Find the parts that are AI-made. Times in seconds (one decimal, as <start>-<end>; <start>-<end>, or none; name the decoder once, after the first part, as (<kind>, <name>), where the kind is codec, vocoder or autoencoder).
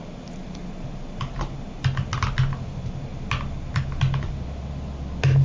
none